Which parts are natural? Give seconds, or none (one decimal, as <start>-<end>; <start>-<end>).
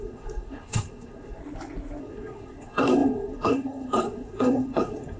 1.4-2.0